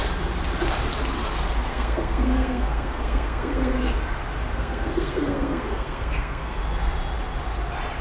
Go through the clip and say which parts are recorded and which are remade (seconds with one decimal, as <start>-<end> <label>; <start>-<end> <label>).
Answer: 0.0-1.7 recorded; 1.7-3.9 remade; 3.9-4.5 recorded; 4.5-6.6 remade; 6.6-8.0 recorded